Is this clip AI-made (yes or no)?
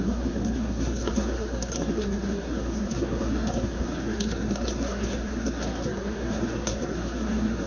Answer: yes